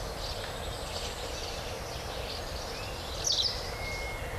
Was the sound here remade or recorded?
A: recorded